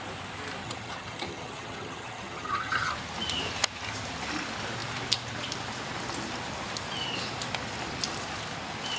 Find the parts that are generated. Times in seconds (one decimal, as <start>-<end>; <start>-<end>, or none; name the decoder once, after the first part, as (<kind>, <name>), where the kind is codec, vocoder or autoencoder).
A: 0.6-2.9 (vocoder, HiFi-GAN)